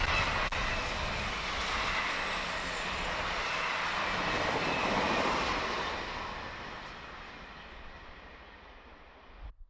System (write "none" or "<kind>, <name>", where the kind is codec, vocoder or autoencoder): none